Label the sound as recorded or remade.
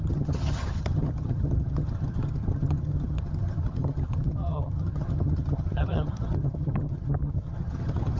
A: remade